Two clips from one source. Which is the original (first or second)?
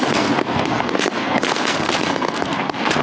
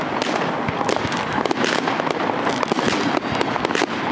second